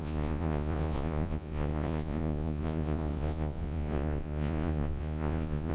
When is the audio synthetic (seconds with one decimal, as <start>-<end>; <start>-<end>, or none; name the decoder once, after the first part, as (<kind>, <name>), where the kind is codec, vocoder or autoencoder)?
0.0-5.7 (vocoder, Vocos)